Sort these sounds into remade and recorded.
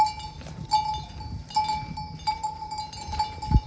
recorded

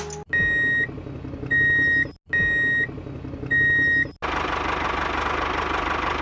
recorded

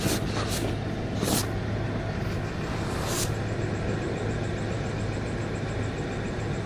recorded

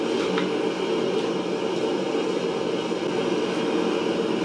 recorded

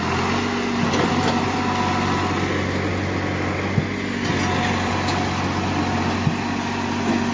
recorded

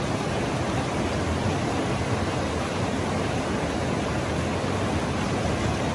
recorded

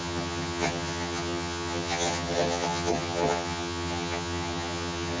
remade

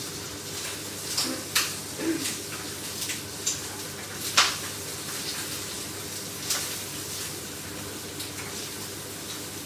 recorded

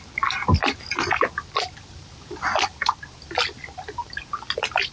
recorded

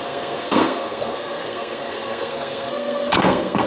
remade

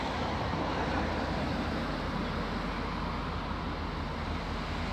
recorded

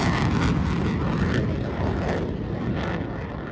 recorded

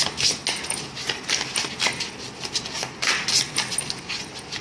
recorded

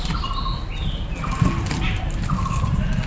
recorded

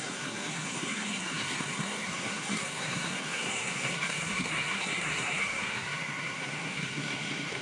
remade